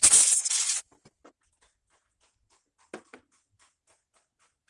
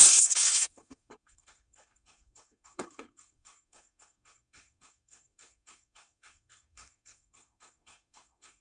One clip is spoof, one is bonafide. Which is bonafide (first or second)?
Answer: first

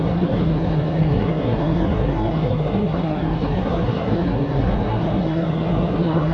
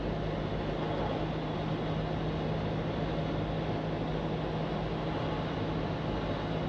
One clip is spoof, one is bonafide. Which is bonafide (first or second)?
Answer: second